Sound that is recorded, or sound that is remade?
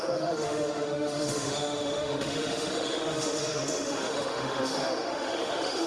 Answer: remade